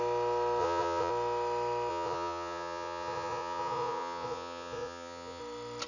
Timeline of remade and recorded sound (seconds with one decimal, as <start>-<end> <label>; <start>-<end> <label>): 0.0-0.6 recorded; 0.6-1.1 remade; 1.1-1.9 recorded; 1.9-5.4 remade; 5.4-5.9 recorded